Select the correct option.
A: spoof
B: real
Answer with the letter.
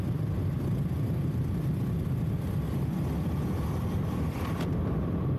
B